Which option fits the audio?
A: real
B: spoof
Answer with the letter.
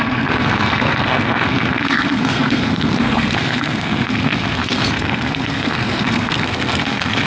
B